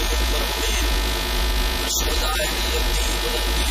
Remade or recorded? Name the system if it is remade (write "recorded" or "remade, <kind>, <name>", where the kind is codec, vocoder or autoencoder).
remade, vocoder, Vocos